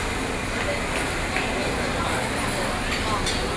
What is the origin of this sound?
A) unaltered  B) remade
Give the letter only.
A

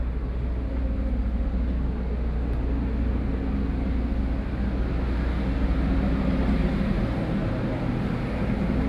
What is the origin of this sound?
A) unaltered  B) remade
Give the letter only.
A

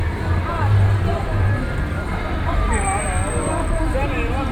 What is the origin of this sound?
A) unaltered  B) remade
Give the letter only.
B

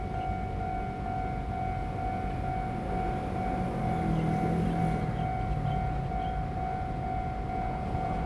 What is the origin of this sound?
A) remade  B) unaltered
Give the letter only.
B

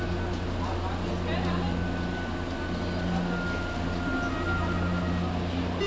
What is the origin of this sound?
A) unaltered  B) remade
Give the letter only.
A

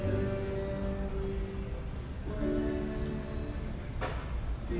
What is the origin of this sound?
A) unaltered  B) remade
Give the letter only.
A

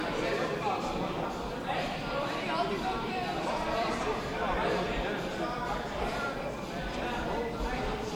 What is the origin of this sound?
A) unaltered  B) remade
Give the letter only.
B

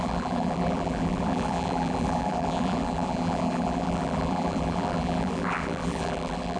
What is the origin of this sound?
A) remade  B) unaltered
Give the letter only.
A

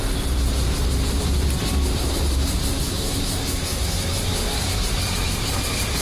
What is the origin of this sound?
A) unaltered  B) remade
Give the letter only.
B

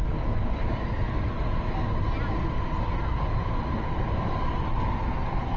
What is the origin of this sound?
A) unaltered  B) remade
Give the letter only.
A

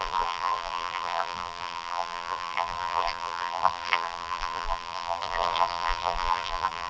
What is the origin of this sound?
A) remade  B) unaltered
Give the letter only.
A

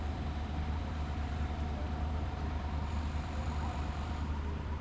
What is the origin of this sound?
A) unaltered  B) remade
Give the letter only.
B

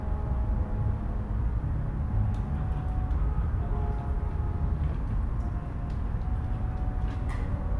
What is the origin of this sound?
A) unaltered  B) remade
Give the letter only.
A